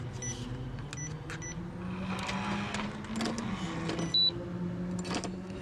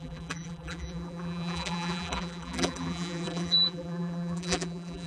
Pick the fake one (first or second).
second